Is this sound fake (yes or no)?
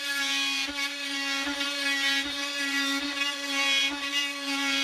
yes